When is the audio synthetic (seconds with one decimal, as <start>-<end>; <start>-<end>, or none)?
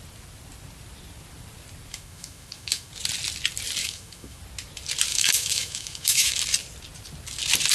1.9-2.9; 3.8-4.4; 5.1-6.4